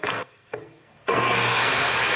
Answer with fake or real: fake